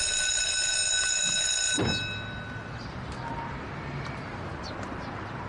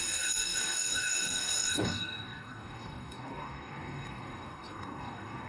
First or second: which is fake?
second